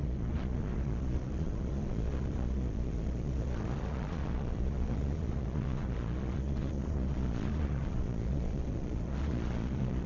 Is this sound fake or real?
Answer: fake